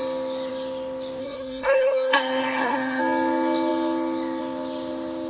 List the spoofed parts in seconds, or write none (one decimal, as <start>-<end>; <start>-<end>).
1.2-3.0